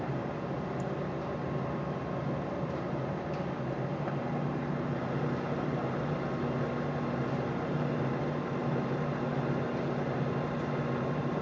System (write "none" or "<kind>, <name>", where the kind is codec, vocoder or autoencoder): none